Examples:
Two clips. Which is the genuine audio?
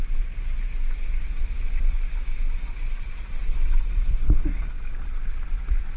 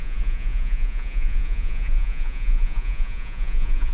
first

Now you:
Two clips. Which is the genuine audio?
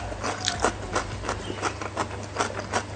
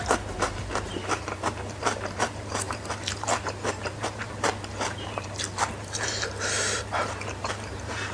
first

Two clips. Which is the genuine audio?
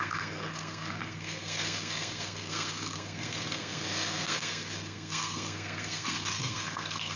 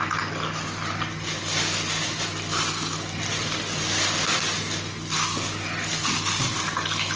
second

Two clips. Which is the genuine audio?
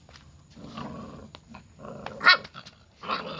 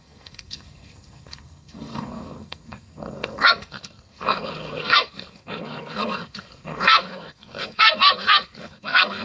first